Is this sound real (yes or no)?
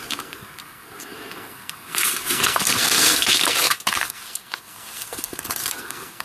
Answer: no